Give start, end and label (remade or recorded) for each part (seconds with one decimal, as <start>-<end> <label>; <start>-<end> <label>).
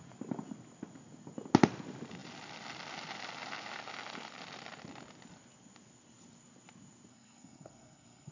0.0-7.1 recorded; 7.1-8.3 remade